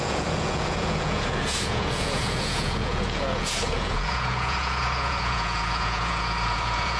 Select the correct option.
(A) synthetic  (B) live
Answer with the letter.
A